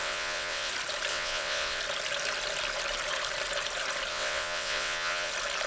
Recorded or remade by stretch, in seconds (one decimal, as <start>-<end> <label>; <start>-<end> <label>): 0.0-0.7 remade; 0.7-1.1 recorded; 1.1-1.8 remade; 1.8-4.1 recorded; 4.1-5.3 remade; 5.3-5.7 recorded